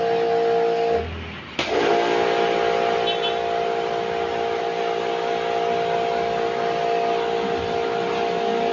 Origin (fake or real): real